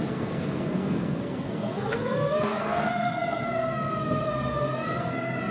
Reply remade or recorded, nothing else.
remade